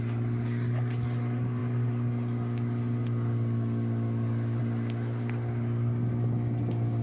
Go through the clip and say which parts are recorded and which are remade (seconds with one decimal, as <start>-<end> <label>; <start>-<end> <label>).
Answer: 0.0-7.0 recorded